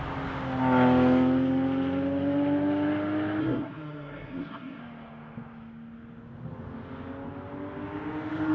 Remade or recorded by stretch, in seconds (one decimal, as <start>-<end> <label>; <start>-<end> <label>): 0.0-3.4 recorded; 3.4-4.8 remade; 4.8-8.5 recorded